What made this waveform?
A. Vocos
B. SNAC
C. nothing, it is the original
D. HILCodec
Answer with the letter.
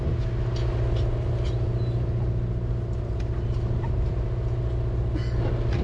C